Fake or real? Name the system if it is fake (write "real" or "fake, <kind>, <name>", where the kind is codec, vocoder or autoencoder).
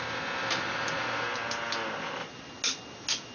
real